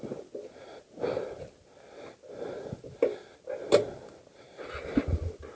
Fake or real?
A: real